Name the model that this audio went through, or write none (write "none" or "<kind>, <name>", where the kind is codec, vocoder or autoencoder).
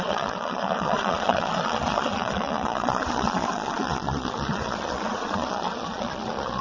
vocoder, Vocos